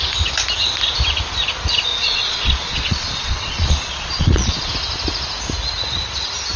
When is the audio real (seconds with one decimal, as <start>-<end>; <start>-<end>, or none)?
0.0-2.0; 4.7-6.6